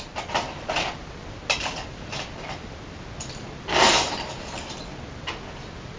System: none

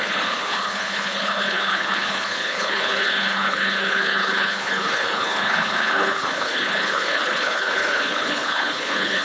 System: codec, HILCodec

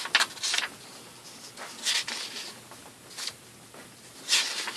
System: none